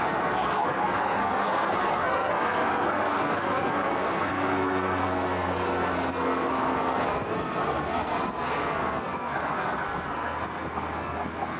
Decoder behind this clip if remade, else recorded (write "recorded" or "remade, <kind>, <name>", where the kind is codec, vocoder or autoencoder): remade, codec, SNAC